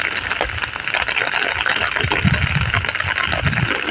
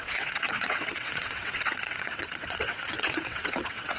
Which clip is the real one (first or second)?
first